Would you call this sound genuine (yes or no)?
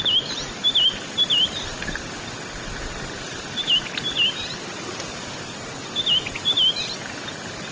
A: yes